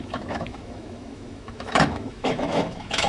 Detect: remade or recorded remade